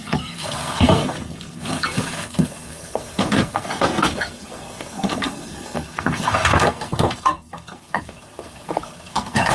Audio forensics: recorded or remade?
remade